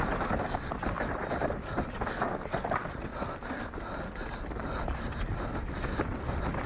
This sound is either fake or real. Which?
real